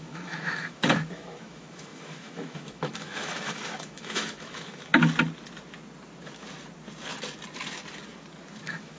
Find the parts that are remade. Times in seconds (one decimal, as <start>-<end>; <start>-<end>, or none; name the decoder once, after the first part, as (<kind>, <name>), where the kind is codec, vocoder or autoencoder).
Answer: 0.0-4.9 (autoencoder, DAC-VAE); 8.6-9.0